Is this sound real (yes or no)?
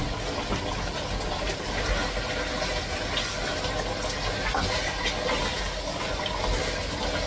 yes